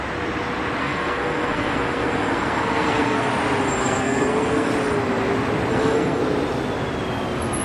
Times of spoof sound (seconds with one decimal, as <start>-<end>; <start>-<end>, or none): 0.8-3.3; 3.8-4.7; 5.7-6.2